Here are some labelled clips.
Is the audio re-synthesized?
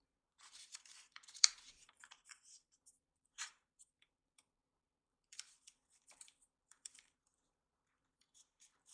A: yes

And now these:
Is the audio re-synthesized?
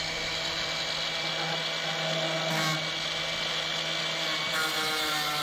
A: no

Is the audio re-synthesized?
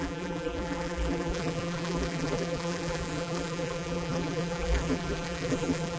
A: yes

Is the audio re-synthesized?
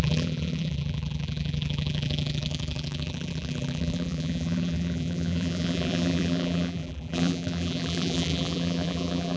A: yes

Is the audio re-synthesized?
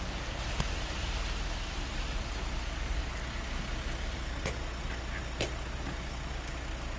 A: no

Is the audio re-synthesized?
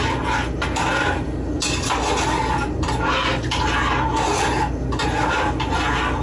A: no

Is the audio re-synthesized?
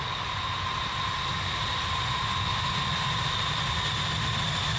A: no